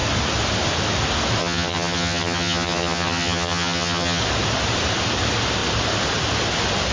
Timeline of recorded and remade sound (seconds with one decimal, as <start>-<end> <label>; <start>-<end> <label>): 0.0-1.4 recorded; 1.4-4.2 remade; 4.2-6.9 recorded